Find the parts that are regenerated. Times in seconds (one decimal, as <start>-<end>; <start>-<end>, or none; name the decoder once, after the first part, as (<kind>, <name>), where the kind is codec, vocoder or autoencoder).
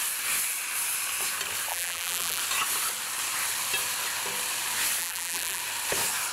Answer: 1.7-2.4 (vocoder, BigVGAN v2); 5.0-5.6